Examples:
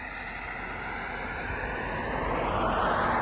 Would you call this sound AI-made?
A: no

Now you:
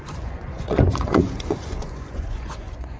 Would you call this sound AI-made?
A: yes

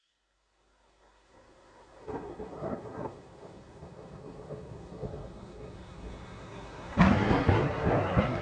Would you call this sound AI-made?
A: yes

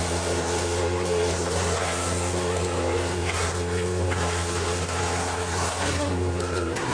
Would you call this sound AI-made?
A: yes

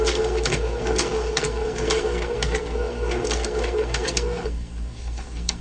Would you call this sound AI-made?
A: yes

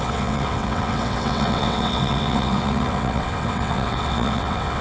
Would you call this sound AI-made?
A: yes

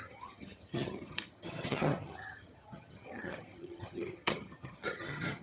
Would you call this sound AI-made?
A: yes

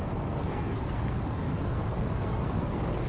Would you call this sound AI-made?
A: yes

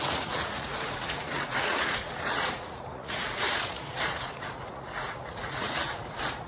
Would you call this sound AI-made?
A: yes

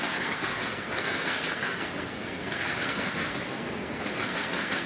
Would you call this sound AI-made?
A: yes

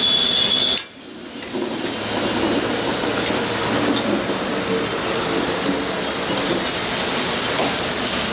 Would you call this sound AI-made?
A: no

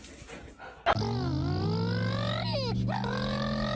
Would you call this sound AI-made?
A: no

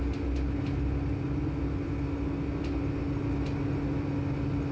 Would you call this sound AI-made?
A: no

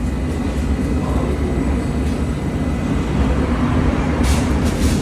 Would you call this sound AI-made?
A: no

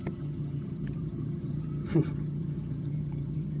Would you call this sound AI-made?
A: yes